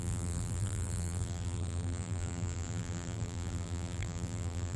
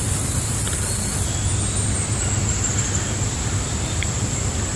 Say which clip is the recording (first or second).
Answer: second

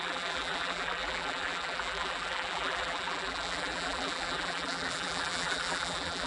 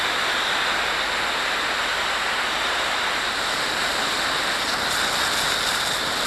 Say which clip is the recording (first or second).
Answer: second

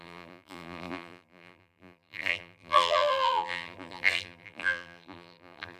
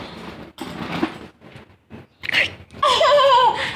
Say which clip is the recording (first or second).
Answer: second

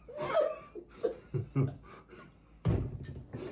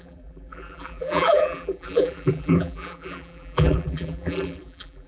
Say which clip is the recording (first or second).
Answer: first